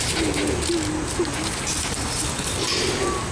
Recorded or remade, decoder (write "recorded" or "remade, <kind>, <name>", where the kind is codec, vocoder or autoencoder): recorded